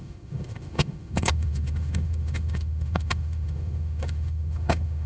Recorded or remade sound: remade